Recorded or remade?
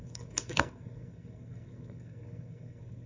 remade